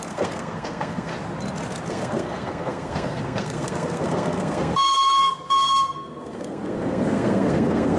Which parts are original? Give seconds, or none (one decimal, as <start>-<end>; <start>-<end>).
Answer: 1.1-1.9